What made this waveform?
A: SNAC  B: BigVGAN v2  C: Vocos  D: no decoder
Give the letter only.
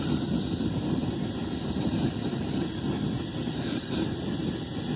D